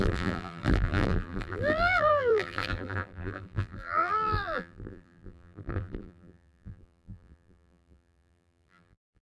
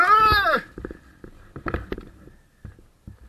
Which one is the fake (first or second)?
first